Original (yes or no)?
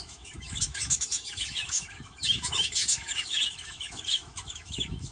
no